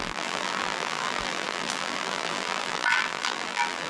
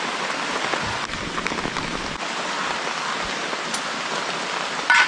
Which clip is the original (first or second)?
second